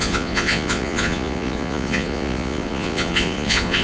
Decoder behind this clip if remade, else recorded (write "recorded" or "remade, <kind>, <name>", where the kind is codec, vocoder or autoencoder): remade, vocoder, Vocos